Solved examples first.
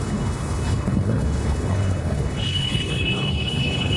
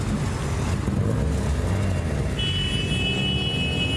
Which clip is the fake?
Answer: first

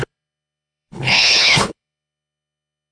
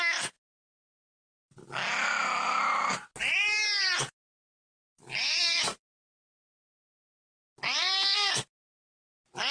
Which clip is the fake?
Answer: first